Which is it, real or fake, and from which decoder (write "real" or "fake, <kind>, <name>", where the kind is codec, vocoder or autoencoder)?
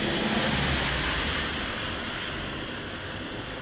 real